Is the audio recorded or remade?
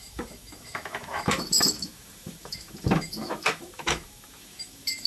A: remade